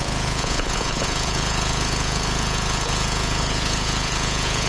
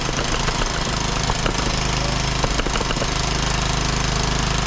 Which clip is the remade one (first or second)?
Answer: first